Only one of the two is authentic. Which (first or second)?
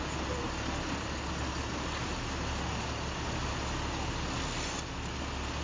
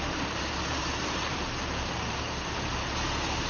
first